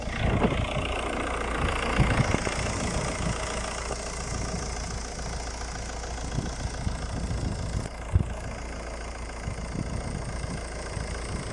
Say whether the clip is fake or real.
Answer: real